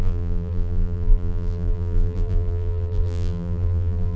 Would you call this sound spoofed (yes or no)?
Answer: yes